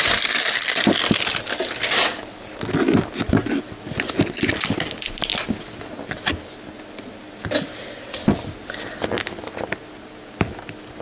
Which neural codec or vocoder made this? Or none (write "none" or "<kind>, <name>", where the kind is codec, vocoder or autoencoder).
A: none